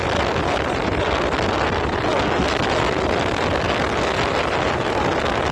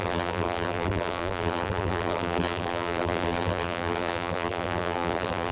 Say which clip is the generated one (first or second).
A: second